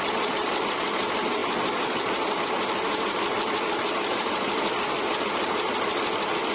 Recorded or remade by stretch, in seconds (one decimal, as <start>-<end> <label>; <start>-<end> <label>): 0.0-6.5 recorded